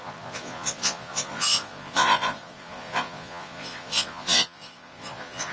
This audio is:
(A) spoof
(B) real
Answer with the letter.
A